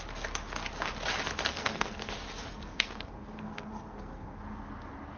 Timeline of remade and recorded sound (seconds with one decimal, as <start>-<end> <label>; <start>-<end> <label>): 0.0-1.5 recorded; 1.5-2.1 remade; 2.1-2.5 recorded; 2.5-4.4 remade; 4.4-5.2 recorded